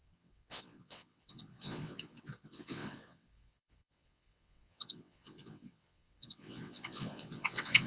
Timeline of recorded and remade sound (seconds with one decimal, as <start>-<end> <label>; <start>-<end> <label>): 0.0-7.9 remade